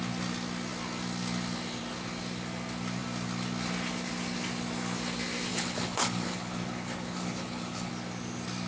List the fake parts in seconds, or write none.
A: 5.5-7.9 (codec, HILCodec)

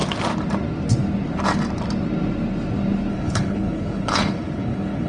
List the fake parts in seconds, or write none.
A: 3.1-5.1 (codec, HILCodec)

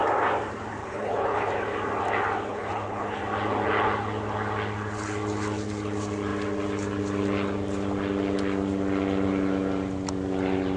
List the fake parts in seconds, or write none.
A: 0.8-1.5 (codec, HILCodec); 2.5-3.2

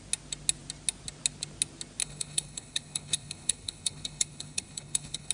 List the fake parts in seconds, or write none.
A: 2.0-5.3 (codec, HILCodec)

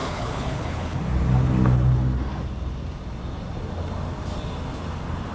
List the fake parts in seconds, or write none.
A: 0.0-1.0 (codec, HILCodec)

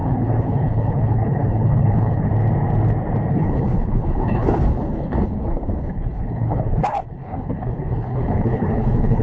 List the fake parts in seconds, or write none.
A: 0.0-2.3 (codec, HILCodec); 3.3-9.2

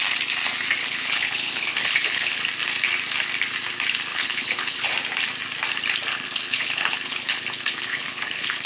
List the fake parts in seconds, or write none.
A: 0.8-2.4 (codec, HILCodec); 4.1-4.9; 6.1-8.7

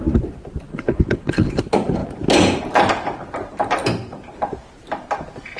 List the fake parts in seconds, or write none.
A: 0.7-1.6 (codec, HILCodec)